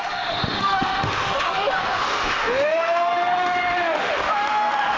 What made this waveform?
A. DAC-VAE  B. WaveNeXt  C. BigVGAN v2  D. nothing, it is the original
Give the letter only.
A